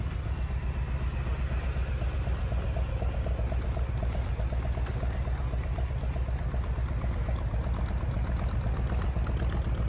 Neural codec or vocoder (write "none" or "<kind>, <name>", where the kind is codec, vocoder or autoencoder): none